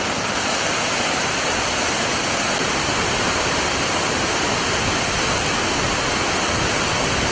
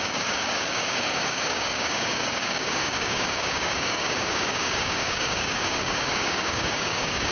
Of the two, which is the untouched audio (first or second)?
first